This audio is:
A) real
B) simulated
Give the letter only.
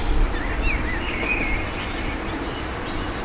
A